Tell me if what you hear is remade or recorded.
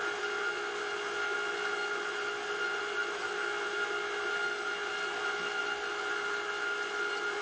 recorded